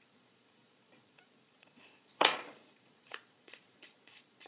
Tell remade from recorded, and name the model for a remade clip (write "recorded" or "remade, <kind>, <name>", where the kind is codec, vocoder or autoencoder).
remade, vocoder, Vocos